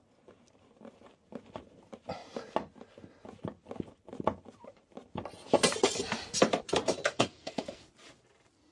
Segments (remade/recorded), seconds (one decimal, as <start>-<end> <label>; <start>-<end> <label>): 0.0-7.1 recorded; 7.1-7.8 remade; 7.8-8.7 recorded

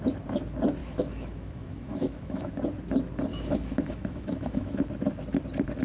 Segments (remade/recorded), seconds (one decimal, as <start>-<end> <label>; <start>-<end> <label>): 0.0-0.8 recorded; 0.8-2.5 remade; 2.5-3.3 recorded; 3.3-4.8 remade; 4.8-5.8 recorded

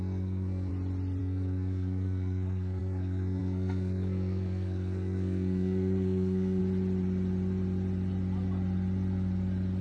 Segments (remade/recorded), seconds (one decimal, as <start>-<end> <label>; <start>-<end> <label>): 0.0-0.7 remade; 0.7-1.2 recorded; 1.2-6.6 remade; 6.6-9.8 recorded